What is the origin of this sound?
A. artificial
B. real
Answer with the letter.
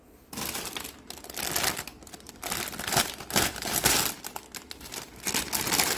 B